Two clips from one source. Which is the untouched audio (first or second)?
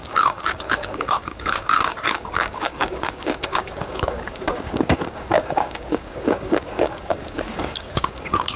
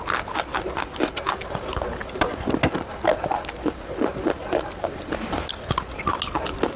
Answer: second